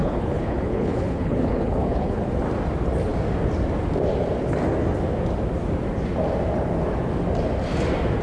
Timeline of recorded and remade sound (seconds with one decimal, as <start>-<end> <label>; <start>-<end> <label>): 0.0-2.3 remade; 2.3-8.2 recorded